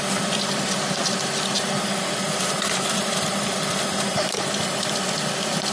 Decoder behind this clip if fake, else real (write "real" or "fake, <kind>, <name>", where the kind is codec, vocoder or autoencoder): real